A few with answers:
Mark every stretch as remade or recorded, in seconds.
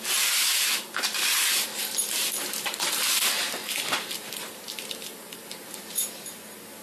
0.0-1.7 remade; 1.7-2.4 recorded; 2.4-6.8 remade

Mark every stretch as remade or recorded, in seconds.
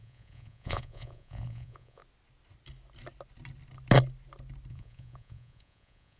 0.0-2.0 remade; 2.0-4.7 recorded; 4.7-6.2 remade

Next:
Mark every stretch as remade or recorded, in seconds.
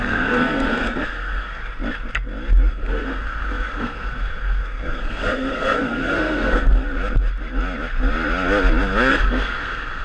0.0-1.6 remade; 1.6-2.7 recorded; 2.7-6.8 remade; 6.8-9.1 recorded; 9.1-10.0 remade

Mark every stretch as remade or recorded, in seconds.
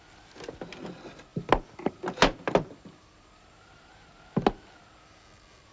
0.0-5.7 recorded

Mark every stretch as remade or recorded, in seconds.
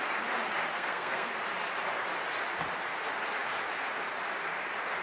0.0-0.7 recorded; 0.7-1.3 remade; 1.3-5.0 recorded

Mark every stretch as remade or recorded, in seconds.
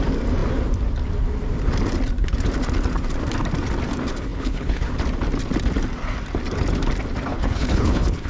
0.0-4.3 recorded; 4.3-4.9 remade; 4.9-7.3 recorded; 7.3-8.3 remade